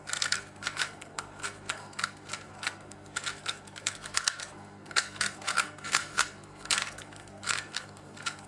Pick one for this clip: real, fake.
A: fake